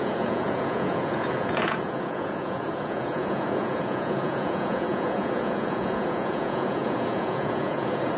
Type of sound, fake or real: fake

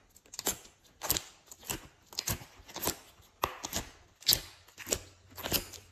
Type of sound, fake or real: real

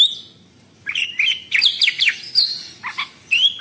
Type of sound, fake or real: real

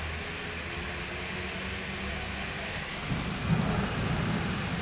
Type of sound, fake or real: real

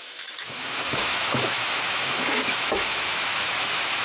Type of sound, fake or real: fake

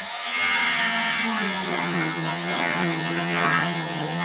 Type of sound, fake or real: fake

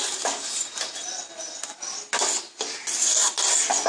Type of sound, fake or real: real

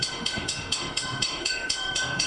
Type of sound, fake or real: fake